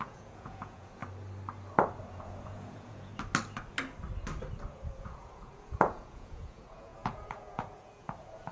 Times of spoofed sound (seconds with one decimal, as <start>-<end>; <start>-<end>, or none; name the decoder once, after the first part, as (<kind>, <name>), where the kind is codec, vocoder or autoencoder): 0.0-1.0 (vocoder, Vocos); 2.0-3.1; 4.7-8.5